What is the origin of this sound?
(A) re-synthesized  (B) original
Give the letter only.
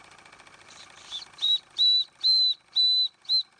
B